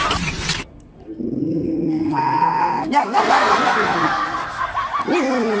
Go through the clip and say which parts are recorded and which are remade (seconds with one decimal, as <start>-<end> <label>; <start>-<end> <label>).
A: 0.0-1.4 recorded; 1.4-4.7 remade; 4.7-5.6 recorded